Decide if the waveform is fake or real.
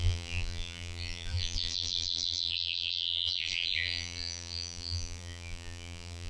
fake